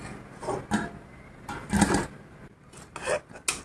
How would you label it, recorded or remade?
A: recorded